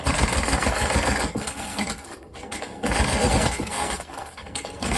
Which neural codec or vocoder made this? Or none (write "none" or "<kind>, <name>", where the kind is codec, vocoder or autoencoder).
codec, SNAC